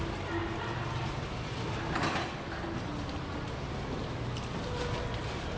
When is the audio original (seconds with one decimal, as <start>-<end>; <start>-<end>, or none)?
0.0-5.6